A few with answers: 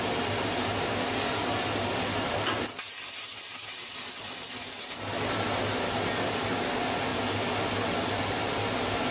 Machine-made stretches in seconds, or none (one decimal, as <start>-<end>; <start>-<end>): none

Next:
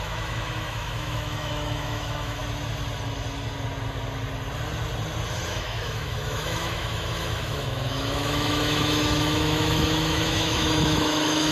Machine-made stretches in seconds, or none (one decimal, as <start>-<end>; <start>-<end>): 0.0-2.4; 5.5-11.5

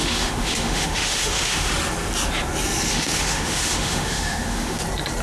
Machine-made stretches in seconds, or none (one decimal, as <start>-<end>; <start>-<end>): 0.0-1.7; 2.9-4.8

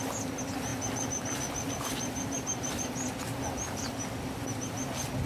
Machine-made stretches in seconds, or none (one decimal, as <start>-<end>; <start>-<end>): none

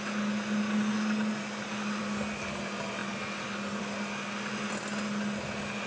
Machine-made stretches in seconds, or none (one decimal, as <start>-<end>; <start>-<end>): none

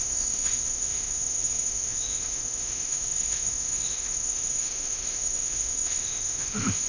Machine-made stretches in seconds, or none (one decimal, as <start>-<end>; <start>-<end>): 0.0-6.9

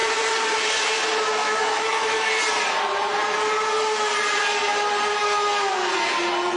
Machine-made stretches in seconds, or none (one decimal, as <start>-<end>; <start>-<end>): 1.4-2.4